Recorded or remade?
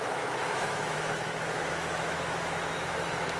remade